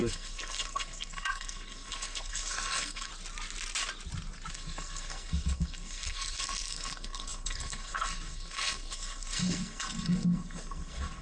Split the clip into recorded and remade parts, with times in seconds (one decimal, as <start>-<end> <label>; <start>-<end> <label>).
0.0-3.1 remade; 3.1-4.5 recorded; 4.5-11.2 remade